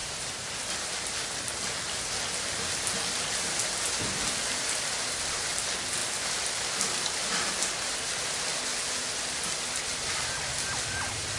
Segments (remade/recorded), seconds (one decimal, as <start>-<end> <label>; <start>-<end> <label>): 0.0-0.5 remade; 0.5-11.4 recorded